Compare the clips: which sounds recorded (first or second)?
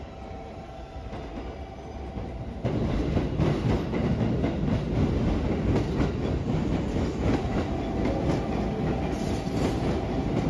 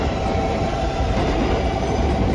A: first